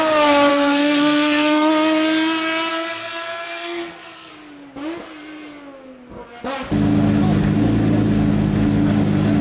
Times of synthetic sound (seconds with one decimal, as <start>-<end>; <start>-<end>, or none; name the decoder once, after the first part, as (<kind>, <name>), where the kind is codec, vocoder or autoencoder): 0.5-1.7 (codec, SNAC); 2.7-4.3